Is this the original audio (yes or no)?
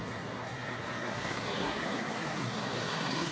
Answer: no